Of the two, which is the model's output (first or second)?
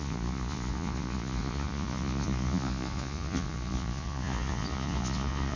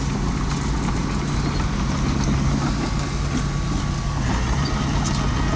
first